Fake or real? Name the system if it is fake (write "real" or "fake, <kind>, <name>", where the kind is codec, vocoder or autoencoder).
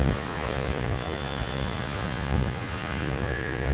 fake, vocoder, Vocos